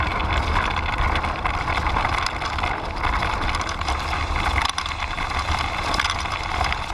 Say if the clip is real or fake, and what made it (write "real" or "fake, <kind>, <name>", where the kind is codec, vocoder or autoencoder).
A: real